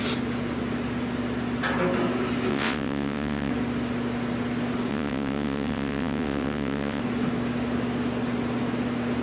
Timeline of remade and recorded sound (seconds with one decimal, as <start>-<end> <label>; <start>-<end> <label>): 0.0-2.5 recorded; 2.5-3.5 remade; 3.5-4.9 recorded; 4.9-7.0 remade; 7.0-9.2 recorded